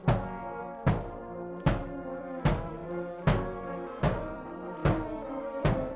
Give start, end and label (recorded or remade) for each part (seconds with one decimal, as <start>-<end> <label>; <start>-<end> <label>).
0.0-0.6 recorded; 0.6-1.2 remade; 1.2-1.8 recorded; 1.8-2.8 remade; 2.8-4.0 recorded; 4.0-6.0 remade